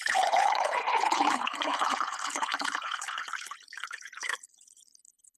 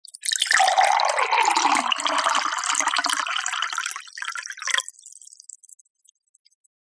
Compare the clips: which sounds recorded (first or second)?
second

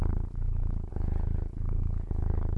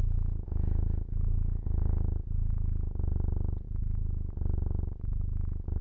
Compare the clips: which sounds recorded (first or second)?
second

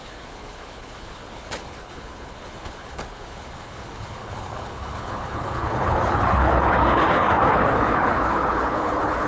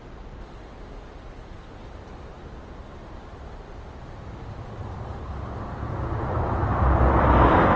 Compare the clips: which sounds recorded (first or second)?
second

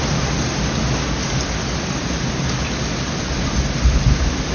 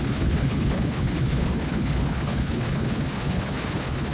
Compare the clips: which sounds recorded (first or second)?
first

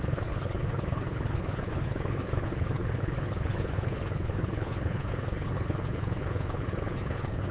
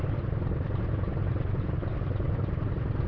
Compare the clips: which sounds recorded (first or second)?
second